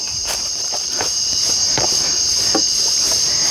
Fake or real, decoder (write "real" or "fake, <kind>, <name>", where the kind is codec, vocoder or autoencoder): fake, vocoder, BigVGAN v2